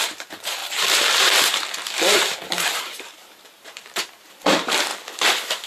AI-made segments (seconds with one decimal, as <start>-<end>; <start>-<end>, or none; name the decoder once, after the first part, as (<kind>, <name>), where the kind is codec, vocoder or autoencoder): 0.0-4.9 (vocoder, BigVGAN v2)